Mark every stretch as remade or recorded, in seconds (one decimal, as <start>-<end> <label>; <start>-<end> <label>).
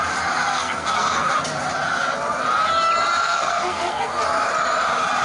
0.0-0.5 recorded; 0.5-1.3 remade; 1.3-3.2 recorded; 3.2-4.2 remade; 4.2-5.2 recorded